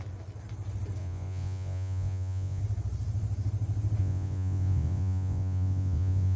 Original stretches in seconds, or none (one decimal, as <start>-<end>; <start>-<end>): 0.0-1.0; 2.6-4.0

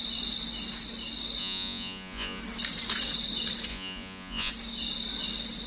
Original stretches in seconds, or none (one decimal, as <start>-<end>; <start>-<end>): 0.0-1.4; 2.4-3.7; 4.5-5.7